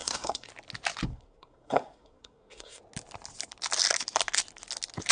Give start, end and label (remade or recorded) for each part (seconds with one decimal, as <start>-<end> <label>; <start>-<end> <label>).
0.0-0.5 remade; 0.5-1.1 recorded; 1.1-2.8 remade; 2.8-5.1 recorded